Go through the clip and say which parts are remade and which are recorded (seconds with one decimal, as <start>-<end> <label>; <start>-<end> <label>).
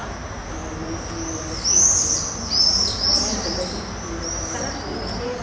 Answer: 0.0-5.4 recorded